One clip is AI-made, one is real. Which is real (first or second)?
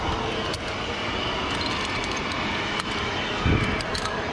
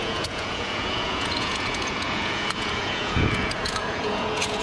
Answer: first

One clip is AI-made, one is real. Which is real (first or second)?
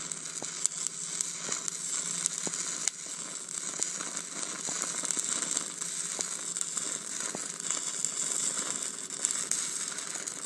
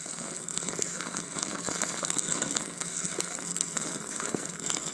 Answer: first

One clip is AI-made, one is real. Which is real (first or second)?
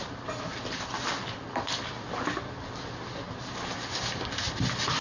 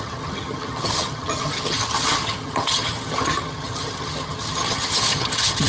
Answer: first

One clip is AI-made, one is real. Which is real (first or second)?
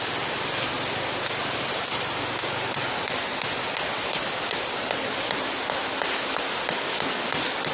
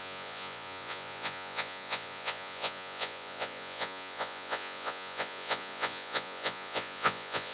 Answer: first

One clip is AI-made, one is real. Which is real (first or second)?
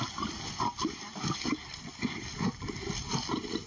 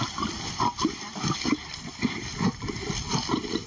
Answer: first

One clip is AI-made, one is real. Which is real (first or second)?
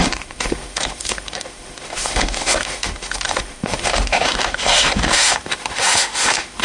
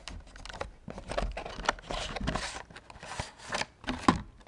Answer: second